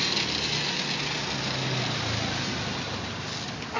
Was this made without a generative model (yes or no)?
yes